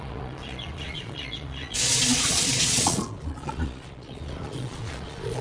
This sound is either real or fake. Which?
fake